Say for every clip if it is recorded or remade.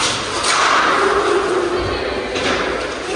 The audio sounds recorded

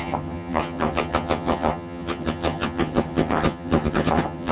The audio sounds remade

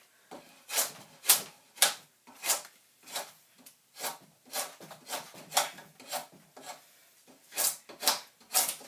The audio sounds recorded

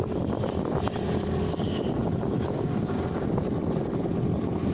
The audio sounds recorded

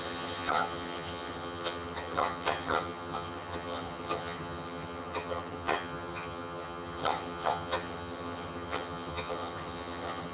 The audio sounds remade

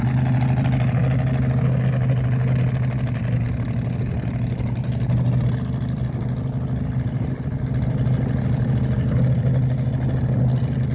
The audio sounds recorded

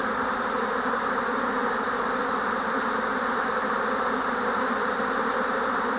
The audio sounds remade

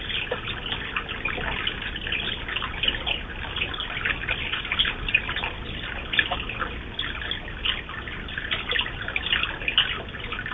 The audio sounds recorded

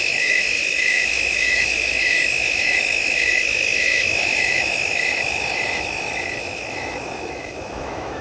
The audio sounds remade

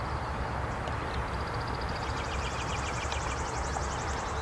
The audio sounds recorded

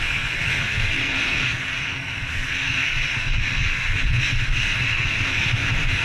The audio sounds remade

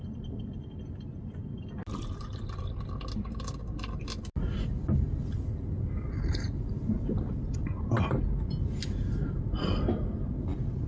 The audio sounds recorded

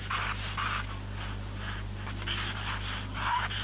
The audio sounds recorded